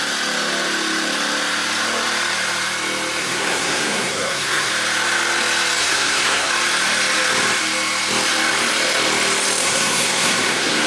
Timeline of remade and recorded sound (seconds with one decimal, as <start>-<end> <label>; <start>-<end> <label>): 0.0-3.2 recorded; 3.2-4.7 remade; 4.7-5.8 recorded; 5.8-6.5 remade; 6.5-9.6 recorded; 9.6-10.9 remade